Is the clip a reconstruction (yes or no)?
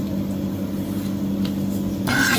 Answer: no